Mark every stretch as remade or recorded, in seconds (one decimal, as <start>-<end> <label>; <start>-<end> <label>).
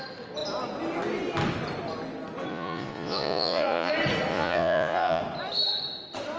0.0-2.5 recorded; 2.5-3.9 remade; 3.9-4.3 recorded; 4.3-5.2 remade; 5.2-6.4 recorded